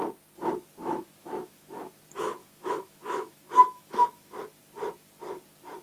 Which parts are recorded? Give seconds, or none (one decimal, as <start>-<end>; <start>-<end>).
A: 0.0-0.8; 2.0-2.4; 4.4-5.8